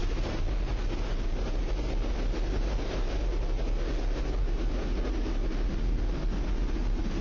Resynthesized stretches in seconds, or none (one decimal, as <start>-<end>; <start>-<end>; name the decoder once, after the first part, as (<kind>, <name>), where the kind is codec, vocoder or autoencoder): none